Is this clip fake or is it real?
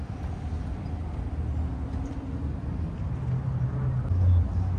real